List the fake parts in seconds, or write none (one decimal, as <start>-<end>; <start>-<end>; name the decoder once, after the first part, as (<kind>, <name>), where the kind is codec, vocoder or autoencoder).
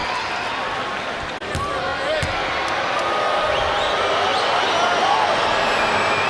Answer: none